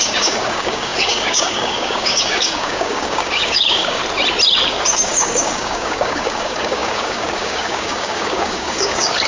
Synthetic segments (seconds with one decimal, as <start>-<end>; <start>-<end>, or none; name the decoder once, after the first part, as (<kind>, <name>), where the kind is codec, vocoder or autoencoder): 0.0-4.0 (codec, DAC); 4.7-9.3